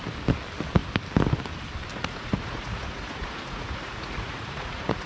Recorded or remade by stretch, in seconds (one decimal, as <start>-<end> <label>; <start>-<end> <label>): 0.0-1.9 recorded; 1.9-5.1 remade

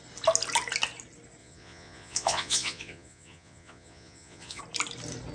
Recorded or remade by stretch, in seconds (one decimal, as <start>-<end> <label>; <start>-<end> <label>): 0.0-1.4 recorded; 1.4-4.6 remade; 4.6-5.3 recorded

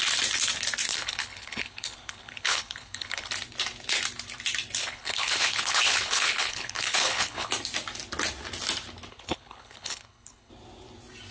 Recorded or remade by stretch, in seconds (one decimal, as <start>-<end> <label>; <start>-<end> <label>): 0.0-0.9 recorded; 0.9-3.3 remade; 3.3-4.8 recorded; 4.8-7.5 remade; 7.5-9.1 recorded; 9.1-10.5 remade; 10.5-11.3 recorded

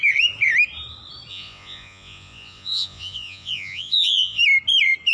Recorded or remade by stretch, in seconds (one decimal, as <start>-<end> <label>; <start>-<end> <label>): 0.0-1.3 recorded; 1.3-4.4 remade; 4.4-5.1 recorded

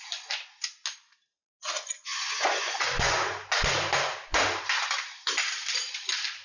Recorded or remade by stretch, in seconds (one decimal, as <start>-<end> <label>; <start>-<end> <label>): 0.0-2.1 recorded; 2.1-3.2 remade; 3.2-6.4 recorded

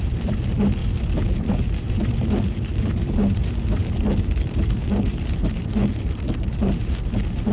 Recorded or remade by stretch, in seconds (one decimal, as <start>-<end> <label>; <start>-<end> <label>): 0.0-7.5 remade